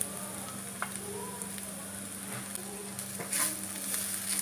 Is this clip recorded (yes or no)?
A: yes